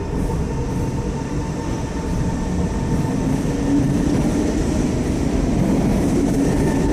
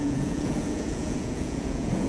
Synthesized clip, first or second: second